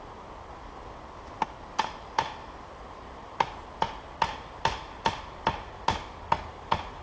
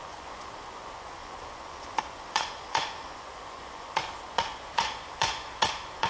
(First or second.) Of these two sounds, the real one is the first